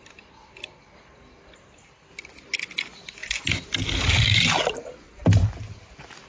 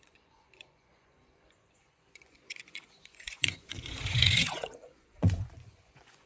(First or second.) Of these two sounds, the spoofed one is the second